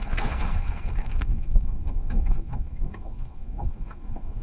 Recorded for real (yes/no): no